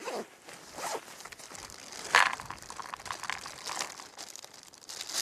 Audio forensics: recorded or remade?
recorded